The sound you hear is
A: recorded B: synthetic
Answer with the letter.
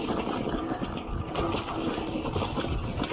A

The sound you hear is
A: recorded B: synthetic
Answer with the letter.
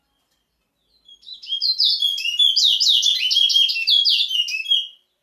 A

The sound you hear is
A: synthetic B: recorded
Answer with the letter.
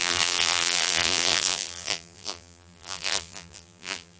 A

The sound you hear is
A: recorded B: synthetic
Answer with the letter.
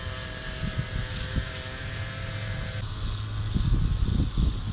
A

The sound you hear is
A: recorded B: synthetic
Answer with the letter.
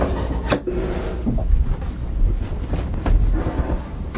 A